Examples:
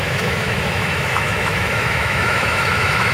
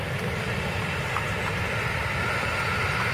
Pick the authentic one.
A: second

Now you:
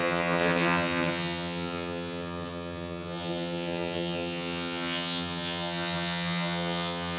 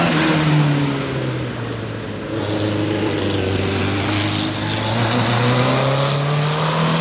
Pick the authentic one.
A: second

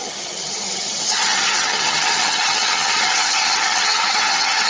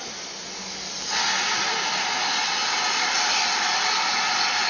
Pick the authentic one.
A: second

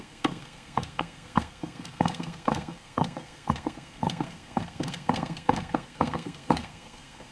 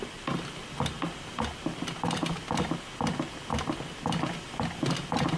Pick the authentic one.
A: second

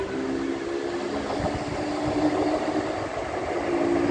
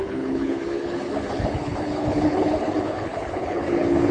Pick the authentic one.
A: first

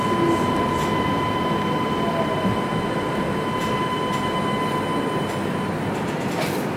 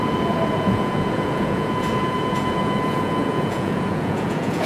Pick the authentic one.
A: first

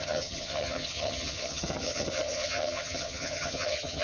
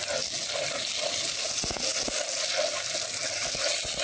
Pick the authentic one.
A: second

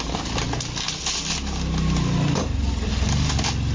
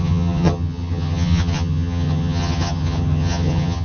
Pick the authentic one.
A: first